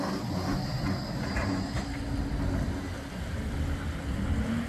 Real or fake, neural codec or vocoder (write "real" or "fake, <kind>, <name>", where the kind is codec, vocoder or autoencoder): real